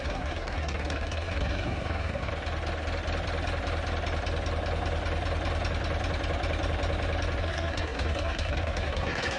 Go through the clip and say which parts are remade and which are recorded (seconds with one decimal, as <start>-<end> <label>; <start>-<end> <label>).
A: 0.0-2.3 remade; 2.3-7.4 recorded; 7.4-9.4 remade